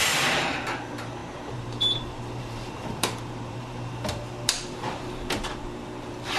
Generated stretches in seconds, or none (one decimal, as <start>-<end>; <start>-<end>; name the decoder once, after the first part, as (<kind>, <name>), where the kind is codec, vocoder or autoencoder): 0.0-6.4 (vocoder, BigVGAN v2)